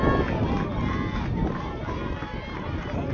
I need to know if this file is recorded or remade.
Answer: recorded